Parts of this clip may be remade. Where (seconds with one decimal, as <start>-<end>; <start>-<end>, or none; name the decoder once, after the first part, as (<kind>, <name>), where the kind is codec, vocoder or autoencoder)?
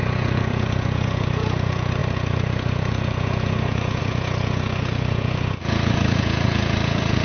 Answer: 0.0-7.2 (vocoder, Vocos)